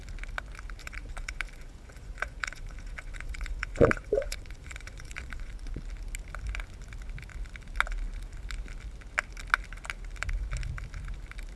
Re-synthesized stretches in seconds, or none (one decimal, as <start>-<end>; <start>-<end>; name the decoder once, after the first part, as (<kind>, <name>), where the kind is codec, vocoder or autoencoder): 0.8-5.8 (vocoder, Vocos)